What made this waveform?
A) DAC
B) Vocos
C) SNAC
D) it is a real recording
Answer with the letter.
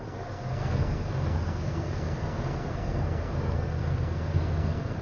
C